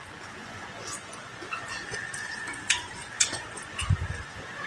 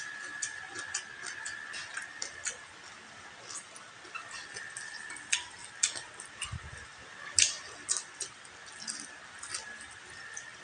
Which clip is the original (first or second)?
second